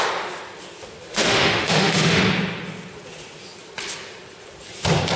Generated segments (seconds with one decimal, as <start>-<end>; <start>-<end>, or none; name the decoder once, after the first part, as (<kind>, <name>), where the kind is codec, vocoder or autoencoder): 1.1-2.2 (autoencoder, DAC-VAE)